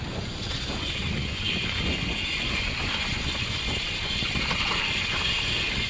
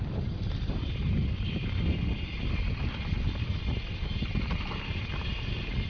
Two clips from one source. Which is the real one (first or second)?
second